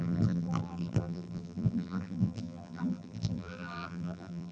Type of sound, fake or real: fake